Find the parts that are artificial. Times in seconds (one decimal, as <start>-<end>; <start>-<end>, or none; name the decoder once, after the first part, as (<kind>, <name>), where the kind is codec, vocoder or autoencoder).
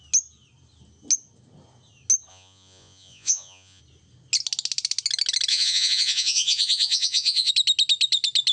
2.3-3.8 (vocoder, Vocos); 5.5-7.5